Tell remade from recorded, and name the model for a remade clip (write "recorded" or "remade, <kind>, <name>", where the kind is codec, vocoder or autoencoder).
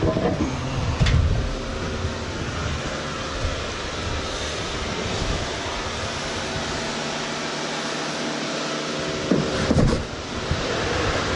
recorded